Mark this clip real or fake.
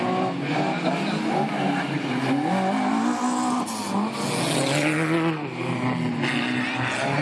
real